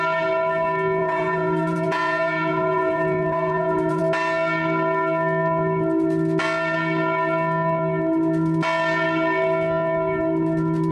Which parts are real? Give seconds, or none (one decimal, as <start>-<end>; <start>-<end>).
0.0-1.0; 4.0-10.9